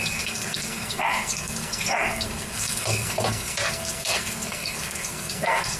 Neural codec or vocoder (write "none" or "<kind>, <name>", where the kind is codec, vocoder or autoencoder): codec, SNAC